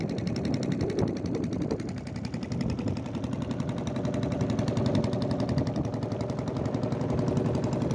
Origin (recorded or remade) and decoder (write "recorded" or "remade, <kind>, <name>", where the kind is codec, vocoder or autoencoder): recorded